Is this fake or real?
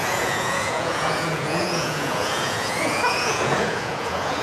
fake